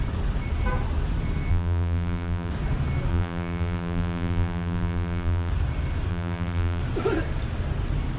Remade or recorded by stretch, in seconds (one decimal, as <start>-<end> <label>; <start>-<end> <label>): 0.0-1.5 recorded; 1.5-2.5 remade; 2.5-3.1 recorded; 3.1-5.5 remade; 5.5-6.1 recorded; 6.1-6.8 remade; 6.8-8.2 recorded